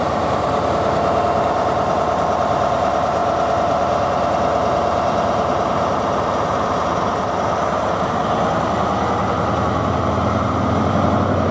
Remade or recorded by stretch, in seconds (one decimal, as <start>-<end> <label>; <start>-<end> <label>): 0.0-8.2 remade; 8.2-9.9 recorded; 9.9-11.5 remade